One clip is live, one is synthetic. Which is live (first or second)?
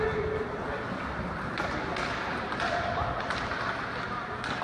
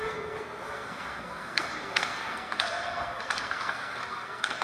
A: first